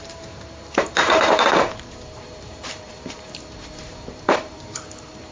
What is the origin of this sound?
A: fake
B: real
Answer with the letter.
A